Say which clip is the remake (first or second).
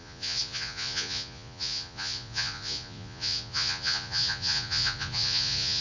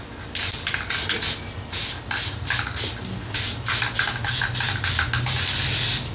first